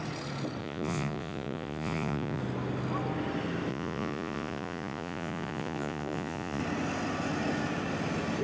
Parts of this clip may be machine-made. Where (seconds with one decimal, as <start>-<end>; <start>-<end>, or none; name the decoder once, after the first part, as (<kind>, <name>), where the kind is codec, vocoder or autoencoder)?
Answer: 0.6-2.4 (vocoder, Vocos); 3.7-6.6